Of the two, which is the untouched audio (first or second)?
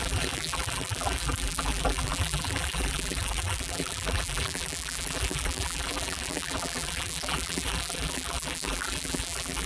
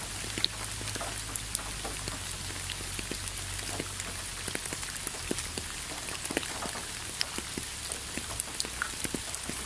second